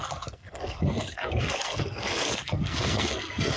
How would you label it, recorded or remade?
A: remade